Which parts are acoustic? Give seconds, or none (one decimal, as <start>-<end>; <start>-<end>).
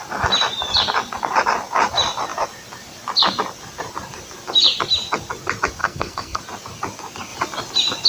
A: 0.0-5.8; 6.4-8.1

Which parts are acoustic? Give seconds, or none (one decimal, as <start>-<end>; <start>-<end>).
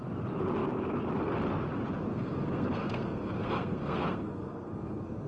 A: 0.0-2.1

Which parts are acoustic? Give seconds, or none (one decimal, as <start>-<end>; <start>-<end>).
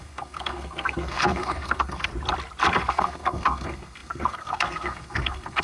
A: 2.1-2.9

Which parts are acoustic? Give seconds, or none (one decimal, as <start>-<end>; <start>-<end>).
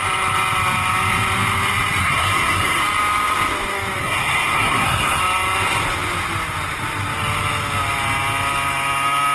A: 0.0-2.0; 2.8-4.0; 5.2-9.3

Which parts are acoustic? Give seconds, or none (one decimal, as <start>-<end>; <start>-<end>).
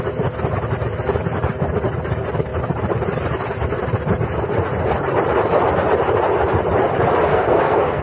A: 0.0-7.3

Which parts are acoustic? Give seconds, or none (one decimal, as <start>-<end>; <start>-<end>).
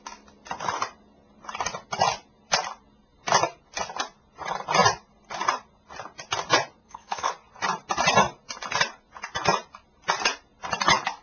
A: 0.0-6.8; 7.3-11.2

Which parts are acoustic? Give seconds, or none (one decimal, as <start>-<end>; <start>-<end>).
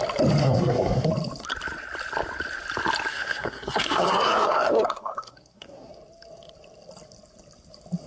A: 0.0-0.4; 1.1-3.1; 5.9-8.1